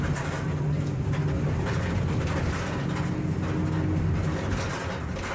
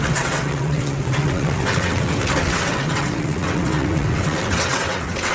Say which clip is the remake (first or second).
second